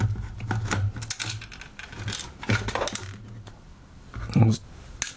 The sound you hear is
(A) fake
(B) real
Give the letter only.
B